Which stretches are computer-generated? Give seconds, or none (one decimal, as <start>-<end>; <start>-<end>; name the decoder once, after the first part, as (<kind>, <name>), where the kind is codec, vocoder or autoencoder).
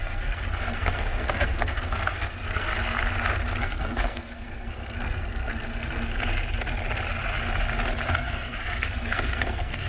0.0-2.7 (codec, SNAC); 3.6-6.1; 8.1-9.9